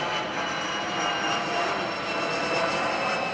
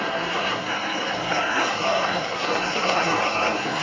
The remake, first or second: second